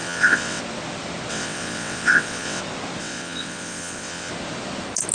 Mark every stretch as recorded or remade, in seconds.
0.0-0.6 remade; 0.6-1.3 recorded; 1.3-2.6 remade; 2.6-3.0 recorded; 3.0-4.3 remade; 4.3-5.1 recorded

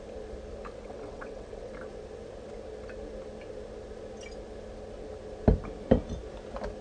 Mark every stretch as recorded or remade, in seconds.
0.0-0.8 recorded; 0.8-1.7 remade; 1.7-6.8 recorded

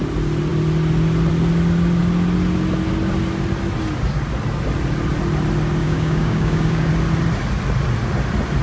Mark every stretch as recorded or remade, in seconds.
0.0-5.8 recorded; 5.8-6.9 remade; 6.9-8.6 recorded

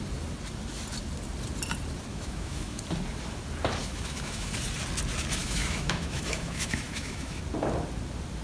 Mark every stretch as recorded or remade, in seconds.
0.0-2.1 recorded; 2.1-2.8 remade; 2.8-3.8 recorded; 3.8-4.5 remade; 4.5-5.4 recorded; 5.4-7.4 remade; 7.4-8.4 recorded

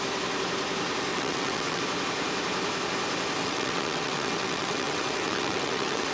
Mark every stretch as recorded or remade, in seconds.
0.0-1.1 recorded; 1.1-1.8 remade; 1.8-3.4 recorded; 3.4-6.1 remade

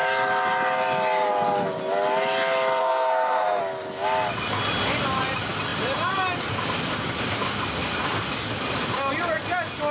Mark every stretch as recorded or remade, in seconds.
0.0-2.8 recorded; 2.8-3.6 remade; 3.6-9.9 recorded

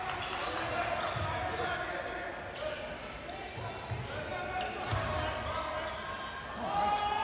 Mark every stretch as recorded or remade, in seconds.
0.0-7.2 recorded